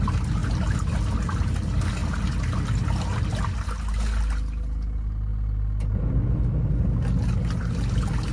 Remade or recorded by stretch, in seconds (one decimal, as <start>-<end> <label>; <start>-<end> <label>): 0.0-8.3 recorded